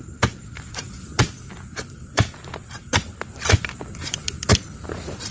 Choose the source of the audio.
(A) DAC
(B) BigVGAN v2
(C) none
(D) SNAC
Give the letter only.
B